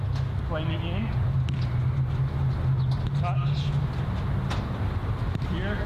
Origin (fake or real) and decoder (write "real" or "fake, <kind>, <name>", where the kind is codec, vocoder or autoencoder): real